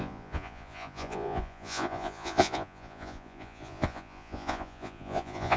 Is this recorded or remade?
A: remade